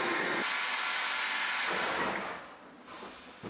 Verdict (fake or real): real